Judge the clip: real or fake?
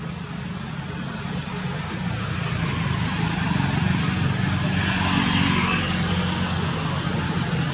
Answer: real